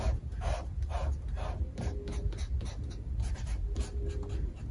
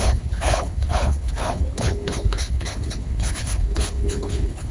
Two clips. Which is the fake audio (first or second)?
second